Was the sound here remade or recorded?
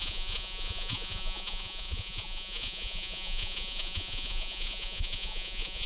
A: remade